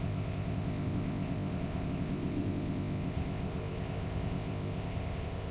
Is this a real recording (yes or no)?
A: no